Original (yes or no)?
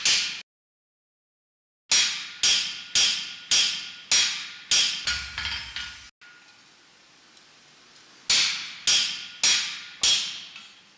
yes